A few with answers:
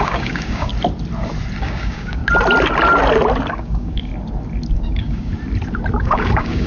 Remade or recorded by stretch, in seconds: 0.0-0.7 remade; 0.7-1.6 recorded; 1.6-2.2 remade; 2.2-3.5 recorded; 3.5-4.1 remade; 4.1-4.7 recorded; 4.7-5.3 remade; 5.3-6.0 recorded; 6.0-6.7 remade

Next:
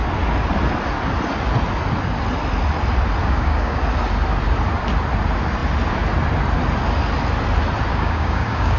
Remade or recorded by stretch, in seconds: 0.0-3.2 recorded; 3.2-3.8 remade; 3.8-7.9 recorded; 7.9-8.8 remade

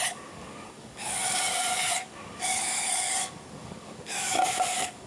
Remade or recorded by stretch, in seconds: 0.0-5.1 remade

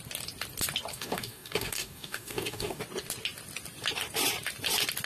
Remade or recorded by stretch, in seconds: 0.0-0.9 recorded; 0.9-2.8 remade; 2.8-5.1 recorded

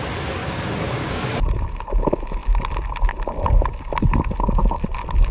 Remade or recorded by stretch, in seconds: 0.0-0.4 recorded; 0.4-1.2 remade; 1.2-5.3 recorded

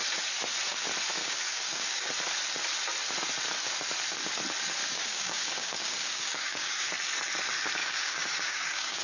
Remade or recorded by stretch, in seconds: 0.0-1.2 recorded; 1.2-2.1 remade; 2.1-4.8 recorded; 4.8-6.9 remade; 6.9-7.8 recorded; 7.8-9.0 remade